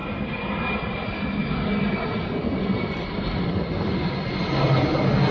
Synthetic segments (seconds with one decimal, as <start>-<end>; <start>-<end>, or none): none